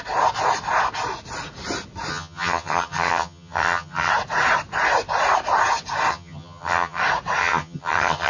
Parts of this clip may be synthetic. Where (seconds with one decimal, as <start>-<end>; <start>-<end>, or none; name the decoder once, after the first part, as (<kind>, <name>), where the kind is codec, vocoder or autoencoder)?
2.1-4.1 (vocoder, HiFi-GAN); 6.1-7.0; 7.4-8.3